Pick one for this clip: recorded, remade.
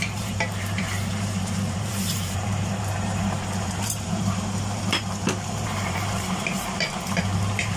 remade